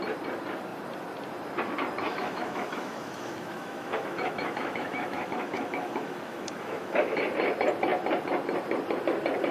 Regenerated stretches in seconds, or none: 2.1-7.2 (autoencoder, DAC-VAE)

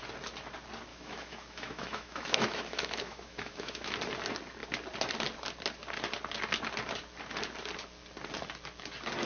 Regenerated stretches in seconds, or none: 0.9-3.9 (autoencoder, DAC-VAE)